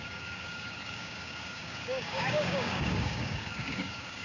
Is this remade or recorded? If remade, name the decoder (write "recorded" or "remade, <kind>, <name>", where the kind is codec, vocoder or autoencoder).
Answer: remade, codec, DAC